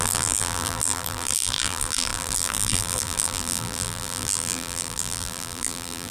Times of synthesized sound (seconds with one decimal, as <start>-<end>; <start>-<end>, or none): 0.0-6.1

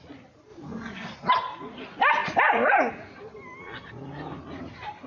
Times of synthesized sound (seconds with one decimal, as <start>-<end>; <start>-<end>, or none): none

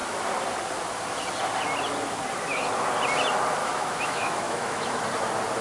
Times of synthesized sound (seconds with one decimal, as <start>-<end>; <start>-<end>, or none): 3.6-5.0

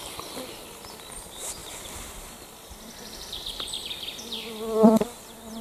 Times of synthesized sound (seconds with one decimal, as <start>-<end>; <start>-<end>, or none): 0.0-5.6

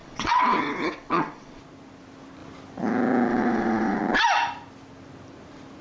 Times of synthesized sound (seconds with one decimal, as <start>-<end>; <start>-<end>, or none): 0.0-1.6; 3.3-4.0

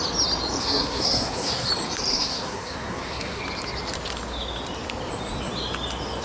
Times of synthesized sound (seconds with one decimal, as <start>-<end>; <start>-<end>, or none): 0.6-1.7; 2.1-3.4

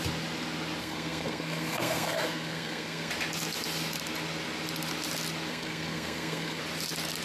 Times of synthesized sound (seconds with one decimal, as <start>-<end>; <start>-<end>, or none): 0.8-3.1; 5.5-6.6

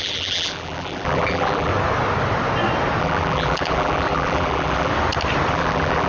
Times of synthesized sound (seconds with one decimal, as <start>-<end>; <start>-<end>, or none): 0.0-1.7; 3.0-4.9; 5.5-6.1